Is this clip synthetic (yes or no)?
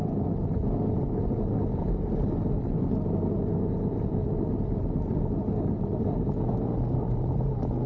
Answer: no